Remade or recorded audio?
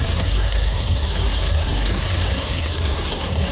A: remade